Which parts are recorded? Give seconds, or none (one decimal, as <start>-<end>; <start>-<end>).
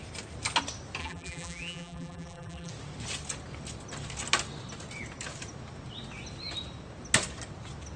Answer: 0.0-1.0; 2.7-8.0